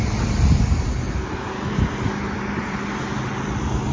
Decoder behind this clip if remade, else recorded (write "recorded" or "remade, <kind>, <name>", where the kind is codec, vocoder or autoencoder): recorded